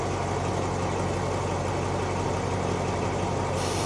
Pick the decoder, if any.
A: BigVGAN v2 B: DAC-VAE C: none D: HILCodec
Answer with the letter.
C